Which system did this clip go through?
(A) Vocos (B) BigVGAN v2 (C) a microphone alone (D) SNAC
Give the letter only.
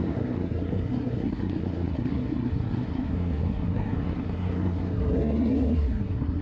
D